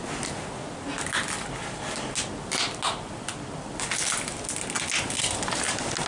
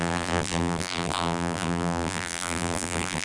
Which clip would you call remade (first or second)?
second